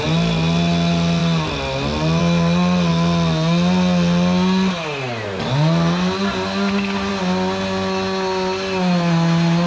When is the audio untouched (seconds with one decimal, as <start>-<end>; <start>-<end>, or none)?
0.0-9.7